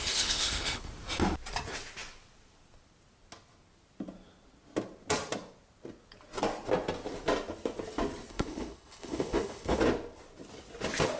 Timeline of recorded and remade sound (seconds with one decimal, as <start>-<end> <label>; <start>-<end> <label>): 0.0-0.9 remade; 0.9-8.3 recorded; 8.3-9.8 remade; 9.8-11.2 recorded